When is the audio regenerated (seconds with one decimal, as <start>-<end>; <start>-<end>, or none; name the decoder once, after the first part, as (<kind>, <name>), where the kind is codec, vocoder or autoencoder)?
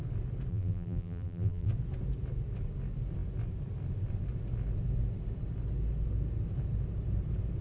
0.5-1.7 (vocoder, BigVGAN v2)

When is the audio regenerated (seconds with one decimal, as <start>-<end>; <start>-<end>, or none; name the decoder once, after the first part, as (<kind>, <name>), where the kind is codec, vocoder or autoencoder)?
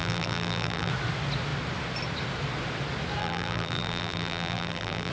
0.0-0.9 (vocoder, BigVGAN v2); 3.2-5.1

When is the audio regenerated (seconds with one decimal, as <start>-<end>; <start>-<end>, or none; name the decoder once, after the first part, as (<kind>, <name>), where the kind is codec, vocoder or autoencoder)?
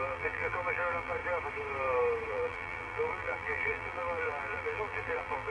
0.0-1.2 (vocoder, BigVGAN v2); 2.3-5.5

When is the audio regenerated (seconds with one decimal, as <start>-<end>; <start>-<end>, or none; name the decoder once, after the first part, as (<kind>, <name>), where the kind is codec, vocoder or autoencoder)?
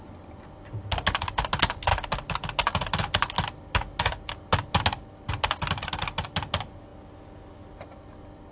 none